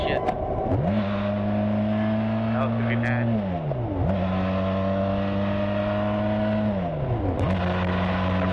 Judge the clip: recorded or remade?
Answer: recorded